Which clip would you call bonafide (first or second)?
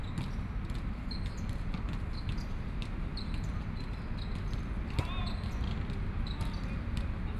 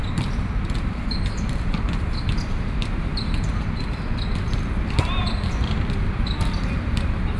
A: first